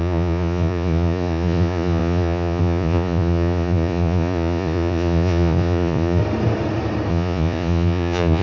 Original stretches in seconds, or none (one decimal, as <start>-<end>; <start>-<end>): 6.2-7.1